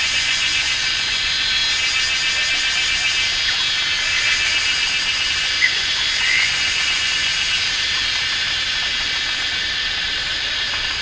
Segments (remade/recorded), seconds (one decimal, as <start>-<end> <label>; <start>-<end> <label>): 0.0-1.6 remade; 1.6-5.3 recorded; 5.3-7.3 remade; 7.3-11.0 recorded